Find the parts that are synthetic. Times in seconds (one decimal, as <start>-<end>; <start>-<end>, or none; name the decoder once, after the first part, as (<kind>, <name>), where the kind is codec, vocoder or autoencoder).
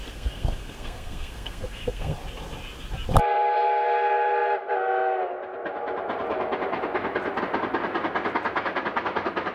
0.0-2.2 (codec, SNAC)